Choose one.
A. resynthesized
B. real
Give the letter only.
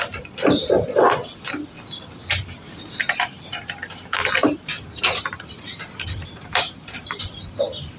B